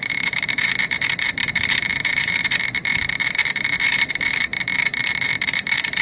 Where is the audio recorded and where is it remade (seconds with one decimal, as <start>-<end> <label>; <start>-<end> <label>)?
0.0-6.0 remade